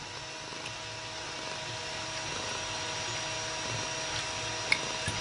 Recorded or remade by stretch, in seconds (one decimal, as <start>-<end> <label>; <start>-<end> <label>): 0.0-5.2 recorded

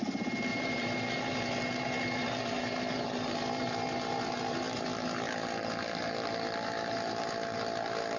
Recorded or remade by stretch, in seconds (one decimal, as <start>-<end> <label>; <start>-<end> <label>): 0.0-0.5 recorded; 0.5-4.8 remade; 4.8-8.2 recorded